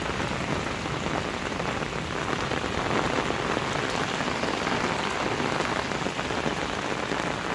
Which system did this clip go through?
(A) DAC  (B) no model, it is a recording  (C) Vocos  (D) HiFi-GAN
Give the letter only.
B